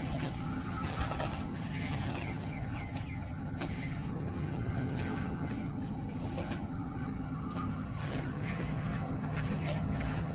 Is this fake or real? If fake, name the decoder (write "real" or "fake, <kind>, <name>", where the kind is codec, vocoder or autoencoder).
fake, vocoder, HiFi-GAN